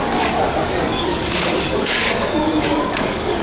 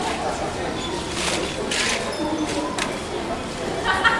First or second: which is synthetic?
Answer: first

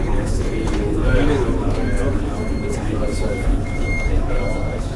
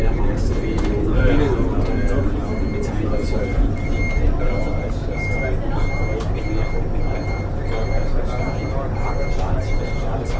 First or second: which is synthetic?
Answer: first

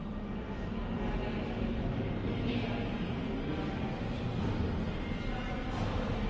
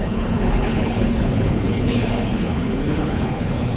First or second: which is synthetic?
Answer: second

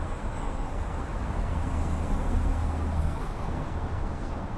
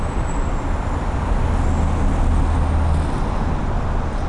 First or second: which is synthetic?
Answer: first